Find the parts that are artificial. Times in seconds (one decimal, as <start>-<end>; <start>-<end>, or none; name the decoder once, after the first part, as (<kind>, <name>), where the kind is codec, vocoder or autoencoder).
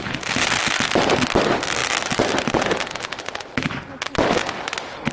1.8-3.2 (vocoder, BigVGAN v2)